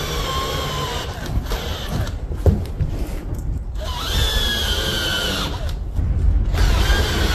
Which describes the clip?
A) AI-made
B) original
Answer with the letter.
B